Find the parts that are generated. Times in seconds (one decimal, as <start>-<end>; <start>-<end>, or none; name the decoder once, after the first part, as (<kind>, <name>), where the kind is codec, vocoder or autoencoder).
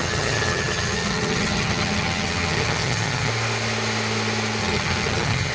0.0-3.3 (vocoder, HiFi-GAN); 4.6-5.5